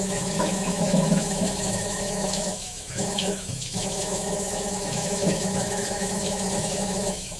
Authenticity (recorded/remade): remade